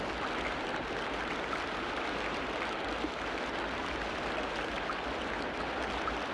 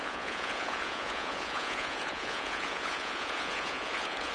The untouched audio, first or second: first